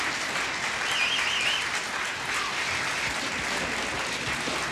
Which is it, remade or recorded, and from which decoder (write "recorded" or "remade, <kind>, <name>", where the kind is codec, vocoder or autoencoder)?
recorded